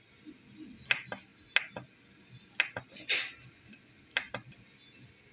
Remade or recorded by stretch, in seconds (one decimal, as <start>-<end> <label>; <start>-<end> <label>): 0.0-5.3 recorded